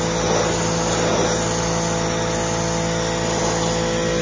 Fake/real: real